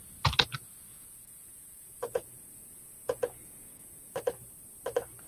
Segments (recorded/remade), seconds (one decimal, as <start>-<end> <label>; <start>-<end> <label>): 0.0-0.9 recorded; 0.9-4.1 remade; 4.1-5.3 recorded